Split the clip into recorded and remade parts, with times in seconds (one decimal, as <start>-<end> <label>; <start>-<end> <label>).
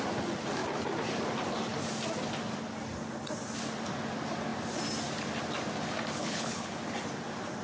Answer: 0.0-6.2 recorded; 6.2-6.8 remade; 6.8-7.6 recorded